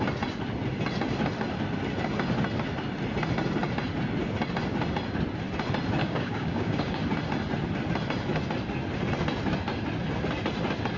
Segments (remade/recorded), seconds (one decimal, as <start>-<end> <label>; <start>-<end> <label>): 0.0-6.0 recorded; 6.0-7.0 remade; 7.0-11.0 recorded